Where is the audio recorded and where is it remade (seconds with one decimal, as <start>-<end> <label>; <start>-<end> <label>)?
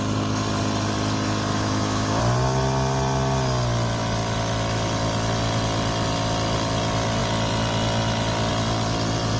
0.0-1.5 recorded; 1.5-2.2 remade; 2.2-9.4 recorded